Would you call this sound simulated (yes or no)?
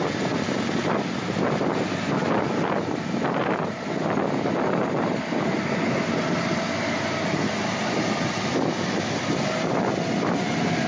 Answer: no